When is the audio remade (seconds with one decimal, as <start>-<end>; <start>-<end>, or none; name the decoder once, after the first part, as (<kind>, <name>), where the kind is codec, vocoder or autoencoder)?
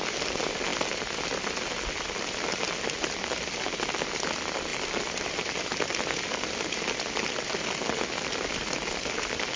none